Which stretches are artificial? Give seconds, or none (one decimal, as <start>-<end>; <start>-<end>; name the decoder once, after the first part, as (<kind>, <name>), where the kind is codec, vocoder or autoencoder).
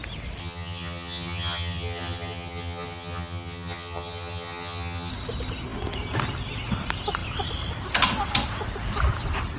0.4-5.1 (vocoder, HiFi-GAN)